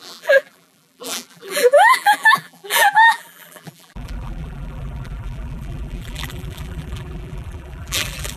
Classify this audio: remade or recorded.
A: remade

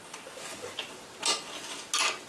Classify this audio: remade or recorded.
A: recorded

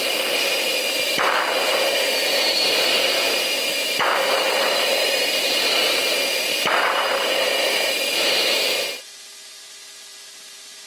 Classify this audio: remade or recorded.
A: recorded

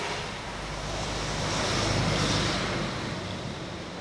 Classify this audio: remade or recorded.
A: recorded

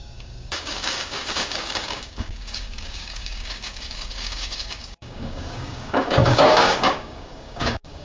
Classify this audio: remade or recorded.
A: remade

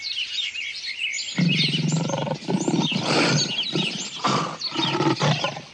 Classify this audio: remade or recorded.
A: recorded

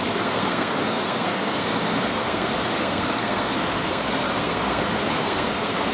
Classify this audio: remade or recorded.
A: remade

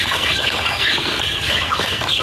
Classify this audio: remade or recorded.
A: remade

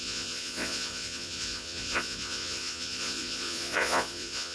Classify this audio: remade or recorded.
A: remade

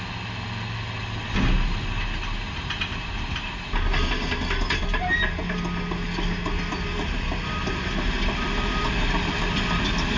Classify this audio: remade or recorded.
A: recorded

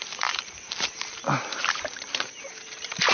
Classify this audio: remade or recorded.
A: remade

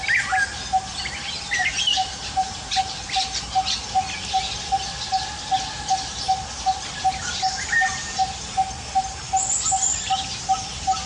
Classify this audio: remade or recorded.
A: recorded